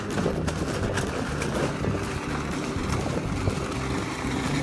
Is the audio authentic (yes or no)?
yes